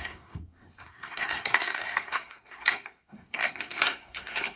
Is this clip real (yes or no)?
no